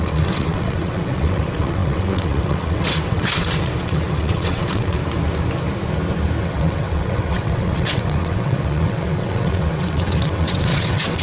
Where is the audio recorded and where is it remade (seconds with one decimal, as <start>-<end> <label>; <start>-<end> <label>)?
0.0-5.0 remade; 5.0-6.4 recorded; 6.4-11.2 remade